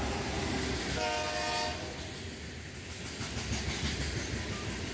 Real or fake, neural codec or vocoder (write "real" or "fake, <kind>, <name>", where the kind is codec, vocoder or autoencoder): real